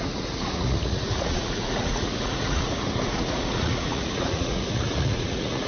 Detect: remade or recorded remade